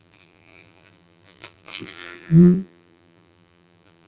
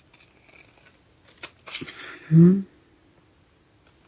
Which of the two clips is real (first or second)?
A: second